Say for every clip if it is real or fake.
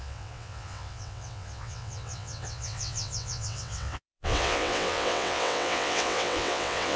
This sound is fake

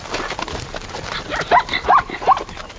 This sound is real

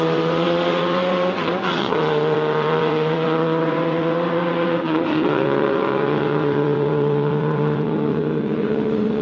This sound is fake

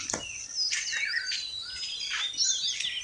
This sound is real